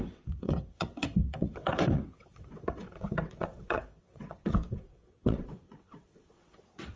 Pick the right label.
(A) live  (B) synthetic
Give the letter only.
B